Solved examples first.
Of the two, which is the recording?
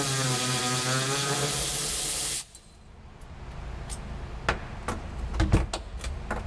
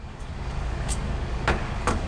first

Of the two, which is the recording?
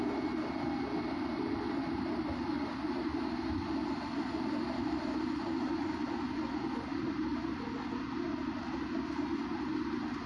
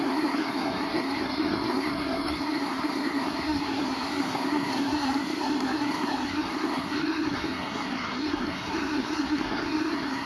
first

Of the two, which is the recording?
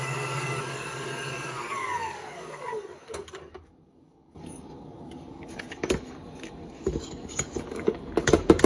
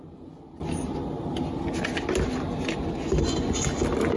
second